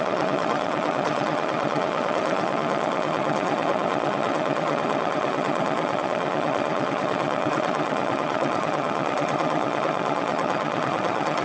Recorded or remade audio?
remade